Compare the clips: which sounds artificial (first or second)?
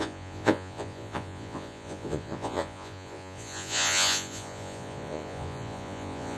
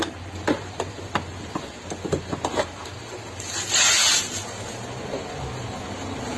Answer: first